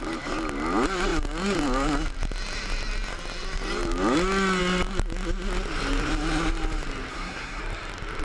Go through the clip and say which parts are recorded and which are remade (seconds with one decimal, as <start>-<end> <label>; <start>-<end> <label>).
0.0-7.1 recorded; 7.1-7.6 remade; 7.6-8.2 recorded